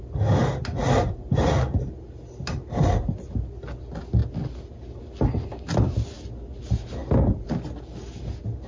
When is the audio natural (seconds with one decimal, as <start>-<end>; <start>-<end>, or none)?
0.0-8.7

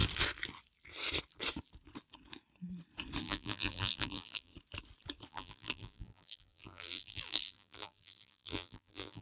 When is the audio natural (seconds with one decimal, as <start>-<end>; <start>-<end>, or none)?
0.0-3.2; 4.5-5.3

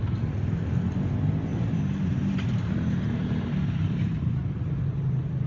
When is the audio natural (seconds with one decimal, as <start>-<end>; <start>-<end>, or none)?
0.0-1.5; 4.8-5.5

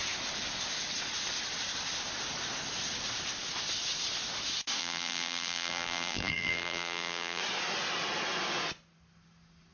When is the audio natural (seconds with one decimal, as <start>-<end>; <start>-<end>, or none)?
0.0-4.8; 7.4-9.7

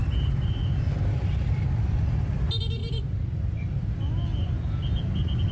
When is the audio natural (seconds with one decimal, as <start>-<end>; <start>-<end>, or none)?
0.0-2.8; 3.4-5.5

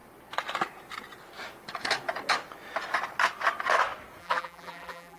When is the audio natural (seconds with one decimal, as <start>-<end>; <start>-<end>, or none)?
0.0-4.2

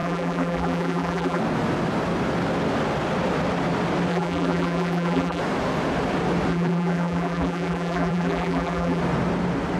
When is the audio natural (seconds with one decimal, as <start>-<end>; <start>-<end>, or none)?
1.4-4.1; 5.4-6.5; 9.0-9.8